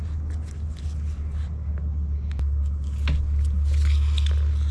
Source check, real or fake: real